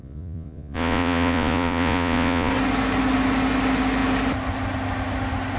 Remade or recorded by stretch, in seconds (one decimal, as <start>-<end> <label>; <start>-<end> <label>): 0.0-2.5 remade; 2.5-5.6 recorded